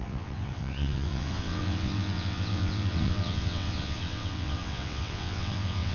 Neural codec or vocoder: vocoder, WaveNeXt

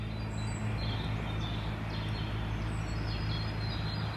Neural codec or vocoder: none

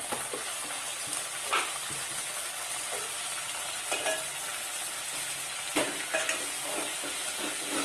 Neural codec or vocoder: none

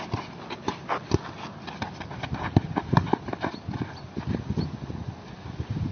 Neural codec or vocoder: none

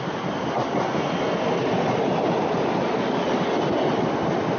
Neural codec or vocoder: none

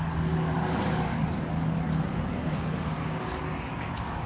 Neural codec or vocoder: codec, DAC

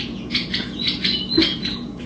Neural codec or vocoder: vocoder, Vocos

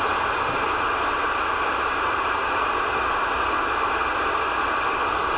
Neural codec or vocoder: none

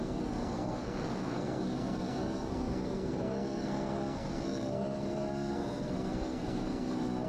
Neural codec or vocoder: codec, SNAC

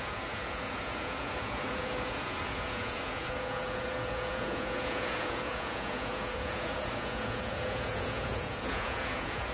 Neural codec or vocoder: vocoder, Vocos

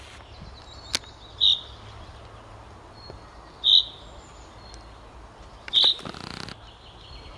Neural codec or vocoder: none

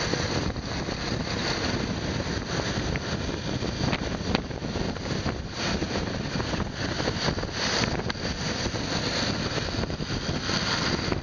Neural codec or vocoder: none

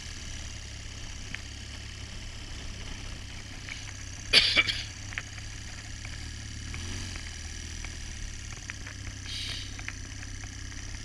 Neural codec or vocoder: none